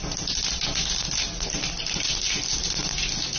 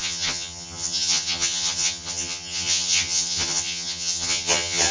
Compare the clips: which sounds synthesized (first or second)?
second